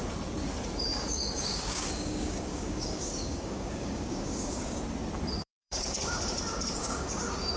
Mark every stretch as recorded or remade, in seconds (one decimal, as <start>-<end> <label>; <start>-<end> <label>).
0.0-0.9 recorded; 0.9-4.8 remade; 4.8-5.4 recorded; 5.4-6.2 remade; 6.2-6.8 recorded; 6.8-7.6 remade